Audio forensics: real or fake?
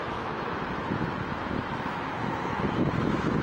fake